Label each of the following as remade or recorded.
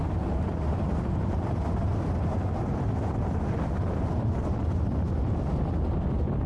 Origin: recorded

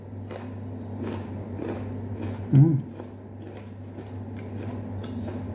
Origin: recorded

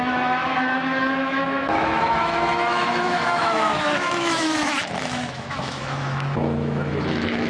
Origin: remade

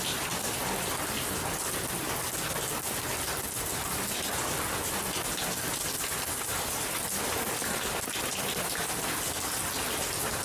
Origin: recorded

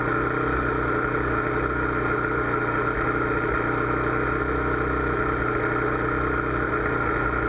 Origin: recorded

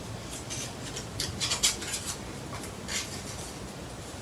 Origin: recorded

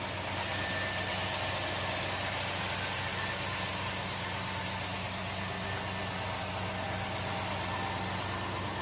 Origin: recorded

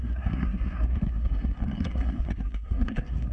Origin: remade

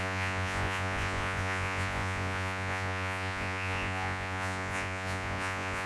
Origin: remade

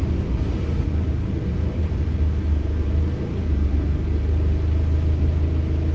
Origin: recorded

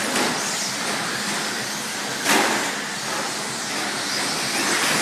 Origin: recorded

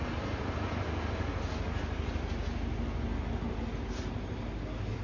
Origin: recorded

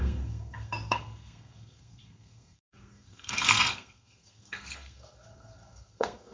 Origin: remade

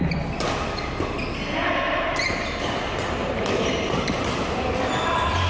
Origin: recorded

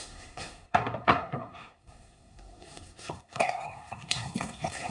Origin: remade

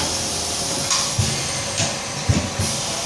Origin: recorded